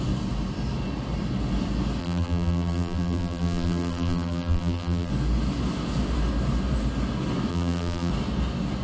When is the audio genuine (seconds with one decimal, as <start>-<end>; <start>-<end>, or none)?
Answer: 0.0-2.0; 5.1-7.5; 8.1-8.8